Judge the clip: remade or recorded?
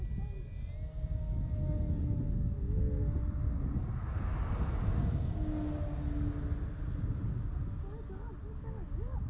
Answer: recorded